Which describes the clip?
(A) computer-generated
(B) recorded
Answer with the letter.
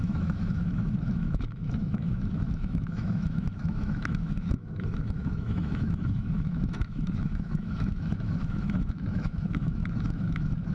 A